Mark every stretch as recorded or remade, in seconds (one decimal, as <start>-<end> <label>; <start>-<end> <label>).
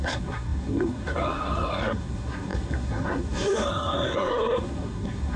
0.0-5.4 remade